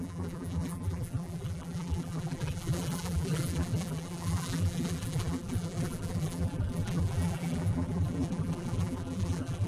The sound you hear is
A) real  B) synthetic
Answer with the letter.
B